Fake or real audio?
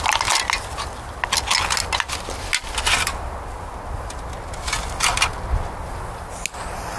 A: real